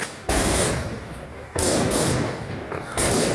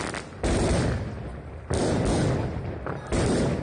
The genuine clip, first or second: second